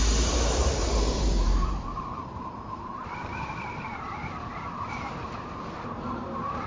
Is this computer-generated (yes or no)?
yes